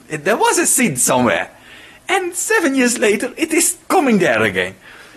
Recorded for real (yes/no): yes